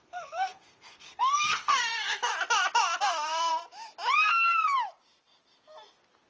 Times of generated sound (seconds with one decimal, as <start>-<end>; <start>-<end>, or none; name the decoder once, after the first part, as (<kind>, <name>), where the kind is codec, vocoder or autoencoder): 0.0-2.3 (codec, SNAC); 3.0-3.5